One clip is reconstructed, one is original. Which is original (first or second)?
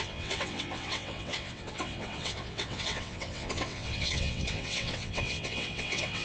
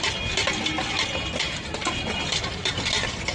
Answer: second